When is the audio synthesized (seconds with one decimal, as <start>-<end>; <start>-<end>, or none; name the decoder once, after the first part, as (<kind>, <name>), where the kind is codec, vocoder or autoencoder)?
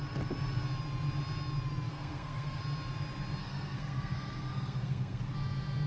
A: 1.9-2.6 (codec, SNAC); 3.4-5.2